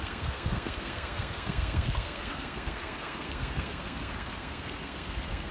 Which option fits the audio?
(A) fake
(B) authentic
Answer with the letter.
A